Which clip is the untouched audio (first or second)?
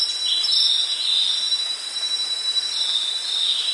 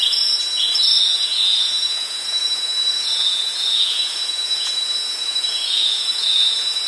first